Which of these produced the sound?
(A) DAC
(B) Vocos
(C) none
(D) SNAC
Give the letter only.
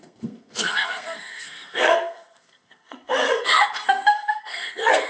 D